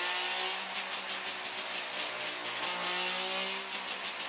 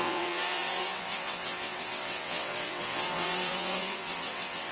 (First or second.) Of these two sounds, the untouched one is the first